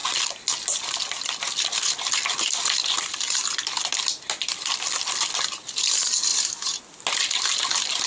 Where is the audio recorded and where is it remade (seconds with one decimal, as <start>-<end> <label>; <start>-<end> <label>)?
0.0-8.1 recorded